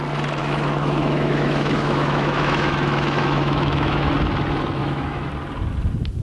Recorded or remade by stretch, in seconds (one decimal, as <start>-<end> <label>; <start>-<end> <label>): 0.0-0.4 recorded; 0.4-4.1 remade; 4.1-4.8 recorded; 4.8-5.3 remade; 5.3-6.2 recorded